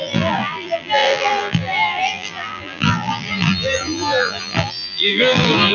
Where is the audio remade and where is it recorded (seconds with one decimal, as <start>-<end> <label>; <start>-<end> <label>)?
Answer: 0.0-5.7 remade